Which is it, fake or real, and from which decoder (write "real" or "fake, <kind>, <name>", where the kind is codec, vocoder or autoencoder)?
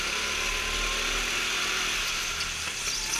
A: real